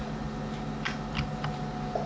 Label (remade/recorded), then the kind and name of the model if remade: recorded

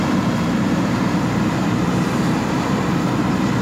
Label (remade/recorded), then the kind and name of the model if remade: remade, vocoder, BigVGAN v2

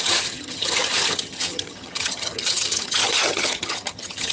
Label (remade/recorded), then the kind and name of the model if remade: remade, vocoder, HiFi-GAN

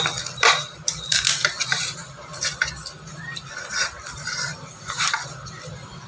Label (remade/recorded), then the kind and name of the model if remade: recorded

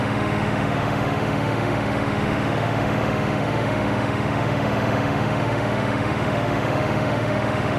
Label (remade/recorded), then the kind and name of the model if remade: remade, autoencoder, DAC-VAE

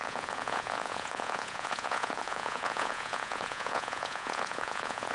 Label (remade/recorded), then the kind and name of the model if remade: remade, vocoder, Vocos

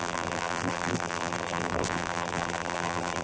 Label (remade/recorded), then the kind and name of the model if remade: remade, vocoder, BigVGAN v2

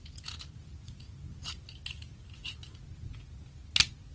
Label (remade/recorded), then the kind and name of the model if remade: recorded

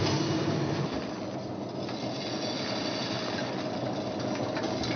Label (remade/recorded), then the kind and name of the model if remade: recorded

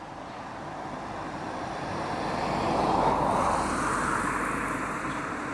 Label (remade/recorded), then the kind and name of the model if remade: recorded